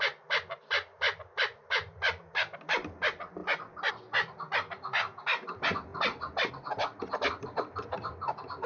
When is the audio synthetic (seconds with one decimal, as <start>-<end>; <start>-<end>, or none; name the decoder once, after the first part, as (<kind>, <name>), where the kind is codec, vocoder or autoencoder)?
none